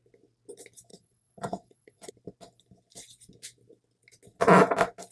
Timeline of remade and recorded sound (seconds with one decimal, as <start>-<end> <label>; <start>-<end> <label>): 0.0-0.9 recorded; 0.9-2.1 remade; 2.1-5.1 recorded